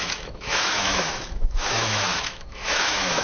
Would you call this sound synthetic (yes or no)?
yes